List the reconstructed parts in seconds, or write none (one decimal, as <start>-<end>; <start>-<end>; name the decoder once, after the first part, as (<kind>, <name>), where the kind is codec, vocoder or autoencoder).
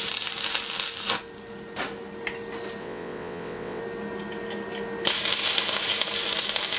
2.8-3.8 (vocoder, WaveNeXt)